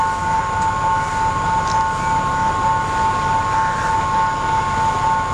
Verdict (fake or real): real